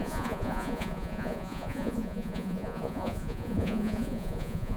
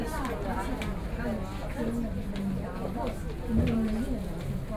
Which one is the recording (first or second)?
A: second